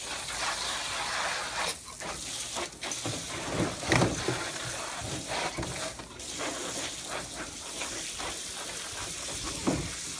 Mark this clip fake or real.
real